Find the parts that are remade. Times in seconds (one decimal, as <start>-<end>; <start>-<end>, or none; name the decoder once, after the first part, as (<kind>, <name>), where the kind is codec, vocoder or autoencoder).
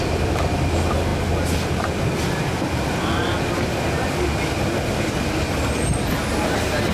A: none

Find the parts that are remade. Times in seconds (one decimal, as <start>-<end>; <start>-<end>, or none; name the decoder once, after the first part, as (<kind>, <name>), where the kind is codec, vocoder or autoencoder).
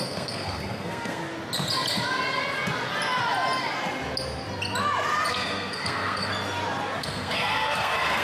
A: 0.0-1.2 (codec, SNAC); 5.3-6.3; 7.0-8.2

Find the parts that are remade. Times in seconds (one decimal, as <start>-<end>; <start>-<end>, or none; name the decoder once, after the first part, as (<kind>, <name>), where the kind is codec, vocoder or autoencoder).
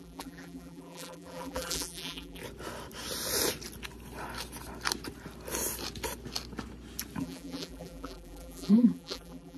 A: 0.0-2.4 (vocoder, BigVGAN v2); 7.2-9.6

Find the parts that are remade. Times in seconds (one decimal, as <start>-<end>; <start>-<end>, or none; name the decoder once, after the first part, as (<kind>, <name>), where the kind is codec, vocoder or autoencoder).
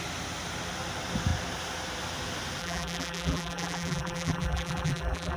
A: 2.6-5.4 (vocoder, BigVGAN v2)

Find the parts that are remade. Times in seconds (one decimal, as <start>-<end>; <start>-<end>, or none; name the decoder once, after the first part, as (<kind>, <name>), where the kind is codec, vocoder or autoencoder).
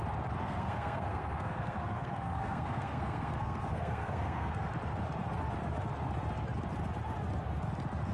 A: 0.4-4.7 (codec, SNAC)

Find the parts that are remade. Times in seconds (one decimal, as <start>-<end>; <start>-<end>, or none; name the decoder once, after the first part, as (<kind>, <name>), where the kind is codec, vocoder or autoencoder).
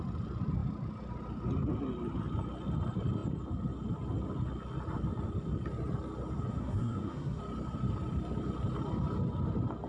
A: 6.5-7.4 (codec, SNAC)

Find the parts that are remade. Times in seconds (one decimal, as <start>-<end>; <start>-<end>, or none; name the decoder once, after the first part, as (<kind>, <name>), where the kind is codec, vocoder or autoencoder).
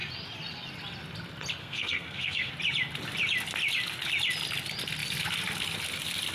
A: 1.6-2.5 (codec, SNAC)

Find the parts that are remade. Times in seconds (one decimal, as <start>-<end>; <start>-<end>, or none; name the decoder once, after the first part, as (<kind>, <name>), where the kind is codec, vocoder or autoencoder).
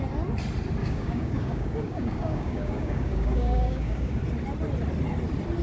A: 0.8-4.2 (codec, DAC)